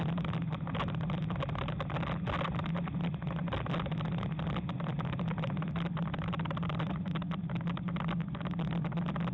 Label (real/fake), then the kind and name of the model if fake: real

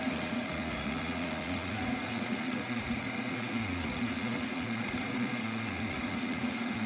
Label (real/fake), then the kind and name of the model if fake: fake, vocoder, Vocos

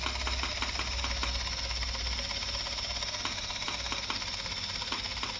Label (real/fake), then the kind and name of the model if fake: real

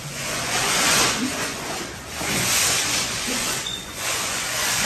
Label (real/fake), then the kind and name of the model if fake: fake, vocoder, Vocos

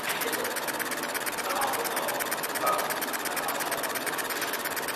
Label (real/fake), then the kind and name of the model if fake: real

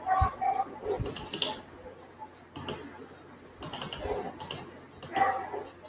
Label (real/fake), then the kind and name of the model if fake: real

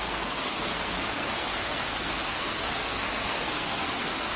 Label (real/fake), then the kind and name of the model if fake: fake, codec, SNAC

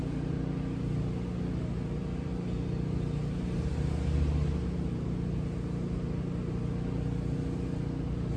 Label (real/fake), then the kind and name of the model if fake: real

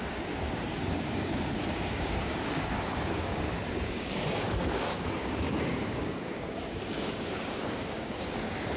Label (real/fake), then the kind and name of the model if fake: fake, codec, DAC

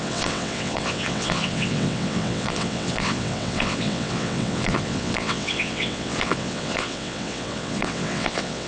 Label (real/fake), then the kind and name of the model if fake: fake, vocoder, WaveNeXt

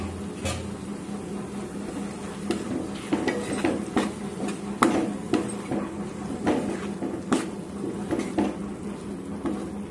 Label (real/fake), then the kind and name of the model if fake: real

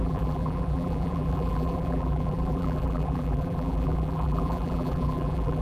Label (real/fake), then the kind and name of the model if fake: fake, vocoder, BigVGAN v2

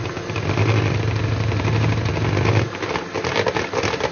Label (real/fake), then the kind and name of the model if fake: real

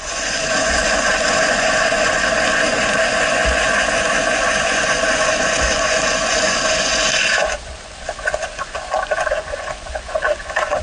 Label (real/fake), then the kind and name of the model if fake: fake, vocoder, Vocos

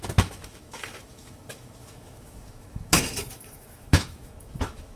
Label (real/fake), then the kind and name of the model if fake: fake, autoencoder, DAC-VAE